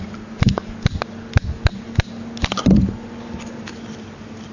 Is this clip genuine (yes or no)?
yes